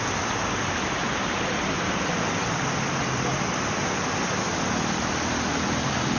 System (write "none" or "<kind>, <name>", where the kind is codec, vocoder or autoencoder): none